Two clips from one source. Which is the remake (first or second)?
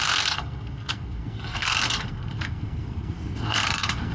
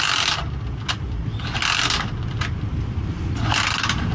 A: first